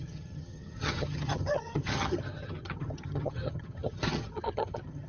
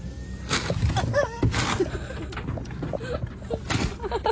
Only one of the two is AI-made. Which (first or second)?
first